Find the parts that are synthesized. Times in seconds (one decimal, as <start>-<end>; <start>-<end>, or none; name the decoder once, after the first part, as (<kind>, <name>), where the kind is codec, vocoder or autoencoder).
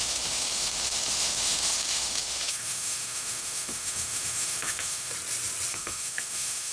0.0-5.1 (autoencoder, DAC-VAE); 5.7-6.7